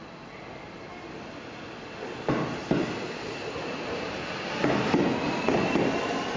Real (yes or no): yes